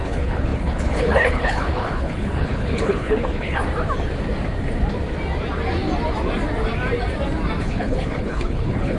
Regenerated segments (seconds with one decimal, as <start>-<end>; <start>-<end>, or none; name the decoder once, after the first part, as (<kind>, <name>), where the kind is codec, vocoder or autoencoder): 0.0-3.6 (codec, HILCodec); 7.6-9.0